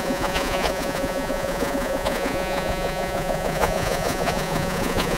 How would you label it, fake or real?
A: fake